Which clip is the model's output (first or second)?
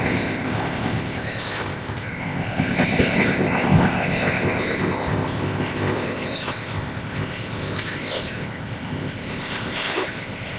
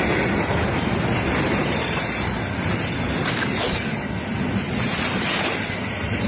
first